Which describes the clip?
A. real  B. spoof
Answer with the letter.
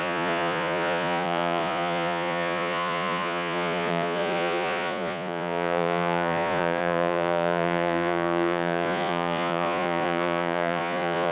B